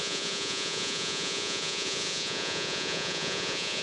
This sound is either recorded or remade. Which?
remade